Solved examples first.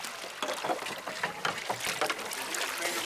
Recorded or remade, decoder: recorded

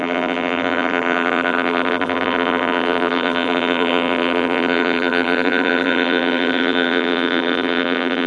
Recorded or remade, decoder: remade, vocoder, BigVGAN v2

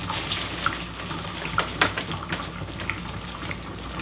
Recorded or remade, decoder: recorded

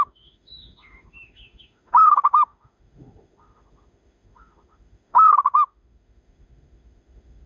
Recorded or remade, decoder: remade, autoencoder, DAC-VAE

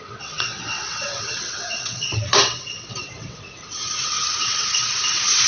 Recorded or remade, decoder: remade, vocoder, WaveNeXt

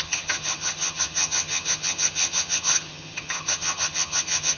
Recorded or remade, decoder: remade, vocoder, HiFi-GAN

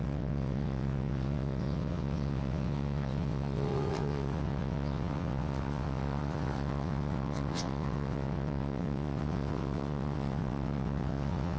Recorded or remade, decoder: remade, vocoder, WaveNeXt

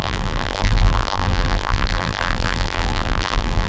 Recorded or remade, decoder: remade, vocoder, BigVGAN v2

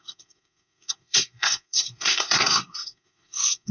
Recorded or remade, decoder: remade, codec, SNAC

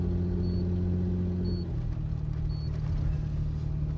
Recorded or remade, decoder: recorded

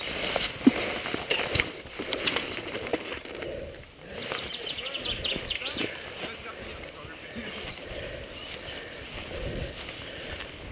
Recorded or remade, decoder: recorded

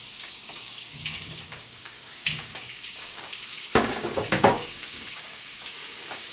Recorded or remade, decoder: remade, codec, DAC